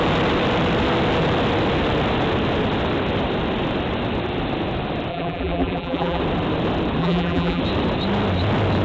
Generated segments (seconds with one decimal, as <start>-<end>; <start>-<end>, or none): 5.1-6.2; 7.0-7.6